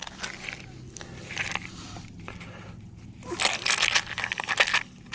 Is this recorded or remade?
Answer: recorded